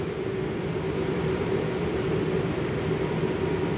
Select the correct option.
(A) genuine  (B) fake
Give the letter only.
A